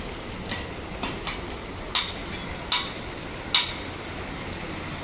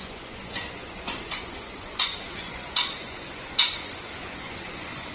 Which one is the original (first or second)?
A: first